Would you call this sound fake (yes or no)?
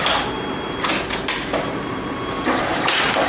no